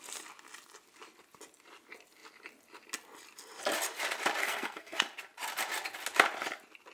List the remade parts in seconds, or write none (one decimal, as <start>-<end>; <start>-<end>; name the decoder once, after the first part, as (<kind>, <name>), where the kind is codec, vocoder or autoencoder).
4.4-5.0 (codec, SNAC)